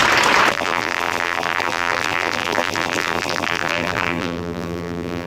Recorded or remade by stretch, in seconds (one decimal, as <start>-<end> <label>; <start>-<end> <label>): 0.0-0.5 recorded; 0.5-5.3 remade